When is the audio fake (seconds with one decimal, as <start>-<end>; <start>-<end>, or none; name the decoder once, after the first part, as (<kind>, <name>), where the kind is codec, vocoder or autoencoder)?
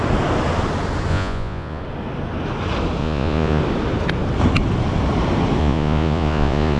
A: 1.1-1.8 (vocoder, Vocos); 3.0-3.6; 5.6-6.8